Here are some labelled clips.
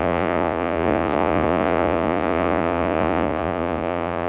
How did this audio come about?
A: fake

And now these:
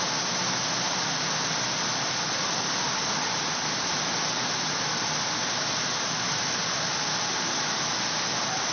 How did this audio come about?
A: real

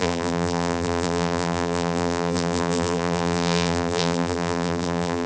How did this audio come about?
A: fake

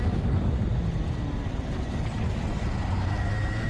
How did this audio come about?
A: real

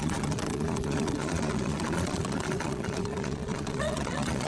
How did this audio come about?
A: fake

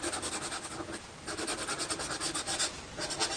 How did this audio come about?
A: real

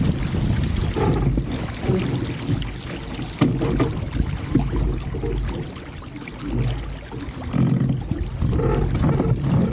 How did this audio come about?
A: real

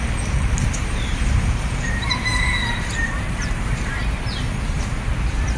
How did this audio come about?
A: fake